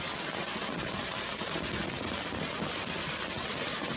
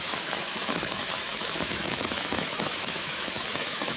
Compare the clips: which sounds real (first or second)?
first